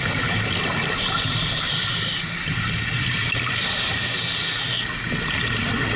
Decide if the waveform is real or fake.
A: real